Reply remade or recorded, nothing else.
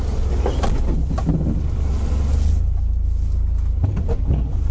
recorded